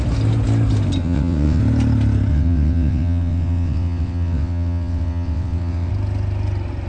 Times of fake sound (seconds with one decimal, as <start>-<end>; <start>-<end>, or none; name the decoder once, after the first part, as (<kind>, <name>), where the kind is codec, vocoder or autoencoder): 1.0-1.6 (vocoder, WaveNeXt); 2.3-5.9